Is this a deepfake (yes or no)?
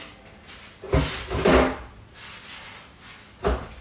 no